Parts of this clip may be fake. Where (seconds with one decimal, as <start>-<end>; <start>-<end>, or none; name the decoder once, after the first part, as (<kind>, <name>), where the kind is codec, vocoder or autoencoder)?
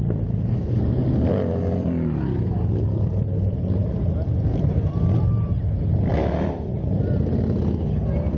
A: 1.0-1.5 (vocoder, BigVGAN v2); 3.8-5.0; 6.1-7.4